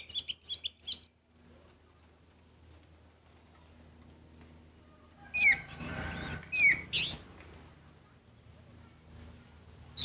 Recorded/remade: recorded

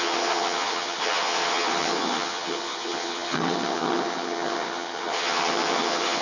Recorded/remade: remade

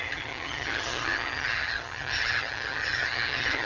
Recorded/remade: remade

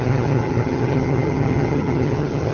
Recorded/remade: remade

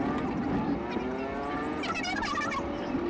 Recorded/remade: recorded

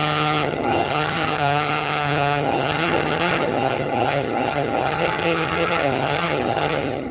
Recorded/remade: remade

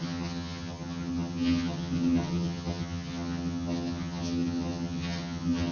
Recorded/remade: remade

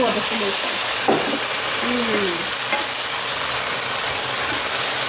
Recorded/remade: recorded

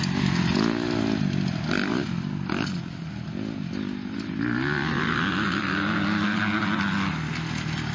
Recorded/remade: recorded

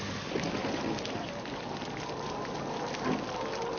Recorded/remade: recorded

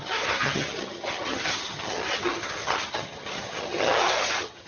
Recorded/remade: remade